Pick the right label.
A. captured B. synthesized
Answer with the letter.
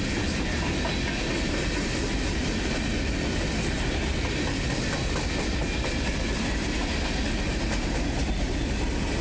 A